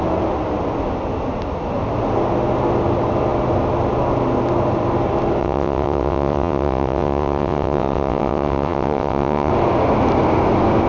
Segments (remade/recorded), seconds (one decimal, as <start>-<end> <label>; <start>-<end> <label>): 0.0-5.4 recorded; 5.4-9.5 remade; 9.5-10.9 recorded